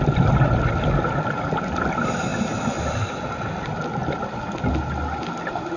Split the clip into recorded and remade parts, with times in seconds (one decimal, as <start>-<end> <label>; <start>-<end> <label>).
0.0-5.8 recorded